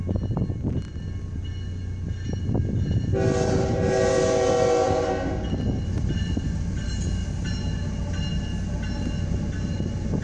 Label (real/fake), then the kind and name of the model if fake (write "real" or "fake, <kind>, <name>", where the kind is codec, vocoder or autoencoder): real